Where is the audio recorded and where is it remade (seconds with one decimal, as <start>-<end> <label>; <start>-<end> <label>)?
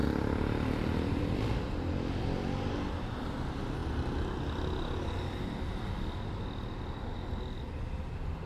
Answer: 0.0-8.5 recorded